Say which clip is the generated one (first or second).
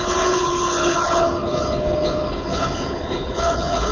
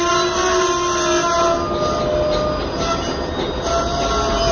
first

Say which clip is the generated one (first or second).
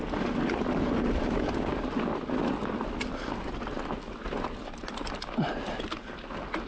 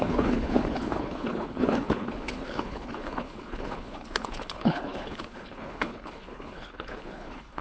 second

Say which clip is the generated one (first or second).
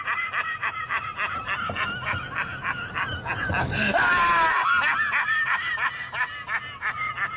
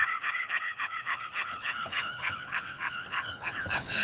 second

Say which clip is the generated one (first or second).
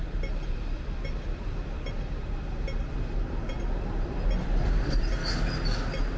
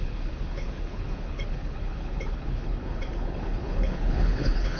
second